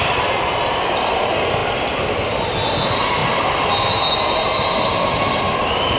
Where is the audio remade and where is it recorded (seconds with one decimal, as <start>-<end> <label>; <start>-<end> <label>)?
0.0-6.0 recorded